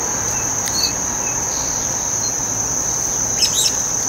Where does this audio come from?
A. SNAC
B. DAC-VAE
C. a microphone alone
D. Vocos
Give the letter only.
C